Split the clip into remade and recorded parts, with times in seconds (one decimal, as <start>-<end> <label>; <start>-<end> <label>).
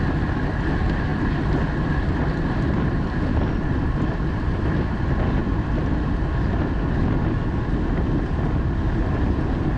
0.0-1.1 recorded; 1.1-2.1 remade; 2.1-9.8 recorded